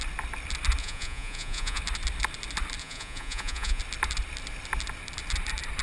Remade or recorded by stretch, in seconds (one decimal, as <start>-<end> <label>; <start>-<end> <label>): 0.0-0.8 recorded; 0.8-1.8 remade; 1.8-2.8 recorded; 2.8-3.8 remade; 3.8-5.8 recorded